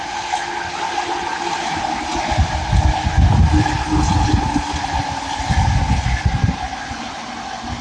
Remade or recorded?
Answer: recorded